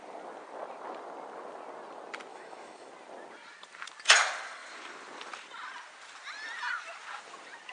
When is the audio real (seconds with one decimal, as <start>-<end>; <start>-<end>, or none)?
0.0-2.3; 2.9-7.7

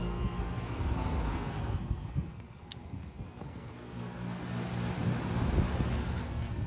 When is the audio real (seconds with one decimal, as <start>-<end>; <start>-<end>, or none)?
4.4-6.2

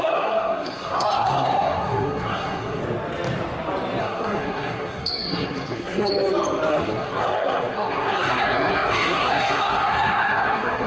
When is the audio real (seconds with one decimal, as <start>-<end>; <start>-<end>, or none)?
2.8-4.0; 6.1-6.7

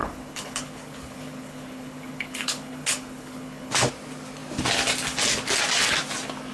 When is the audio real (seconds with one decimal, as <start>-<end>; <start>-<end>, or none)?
3.9-6.5

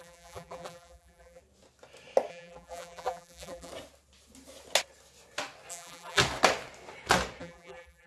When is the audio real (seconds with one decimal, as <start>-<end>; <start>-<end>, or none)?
1.4-2.3; 3.7-5.7; 6.2-7.4